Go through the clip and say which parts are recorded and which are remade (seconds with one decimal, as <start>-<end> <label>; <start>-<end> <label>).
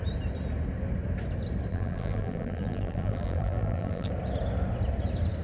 0.0-1.7 recorded; 1.7-4.1 remade; 4.1-5.4 recorded